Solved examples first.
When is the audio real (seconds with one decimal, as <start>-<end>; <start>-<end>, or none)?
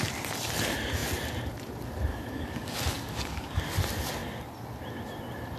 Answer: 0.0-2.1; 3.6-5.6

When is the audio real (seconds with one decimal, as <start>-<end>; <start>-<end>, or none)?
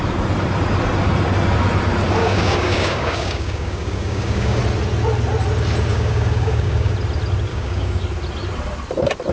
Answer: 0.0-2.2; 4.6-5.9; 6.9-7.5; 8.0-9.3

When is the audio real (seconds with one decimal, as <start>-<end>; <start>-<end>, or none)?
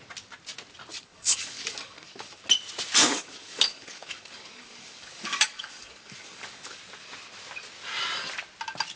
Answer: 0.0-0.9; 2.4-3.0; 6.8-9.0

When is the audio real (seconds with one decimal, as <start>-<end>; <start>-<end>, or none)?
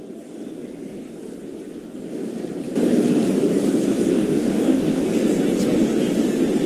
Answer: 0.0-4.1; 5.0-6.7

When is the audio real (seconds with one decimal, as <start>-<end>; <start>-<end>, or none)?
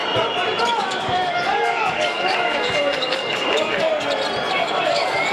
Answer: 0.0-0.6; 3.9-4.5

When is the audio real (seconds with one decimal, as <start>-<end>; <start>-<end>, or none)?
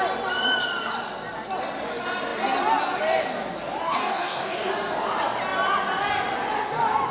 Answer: 0.0-3.8; 4.7-7.1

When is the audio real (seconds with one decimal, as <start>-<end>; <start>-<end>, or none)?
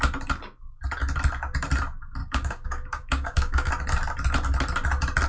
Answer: 0.0-2.2; 3.7-5.3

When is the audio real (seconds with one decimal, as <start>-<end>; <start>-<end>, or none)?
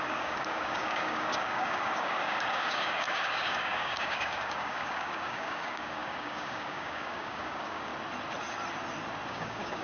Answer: 7.9-9.3